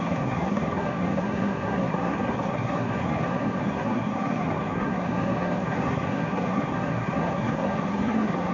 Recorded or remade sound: remade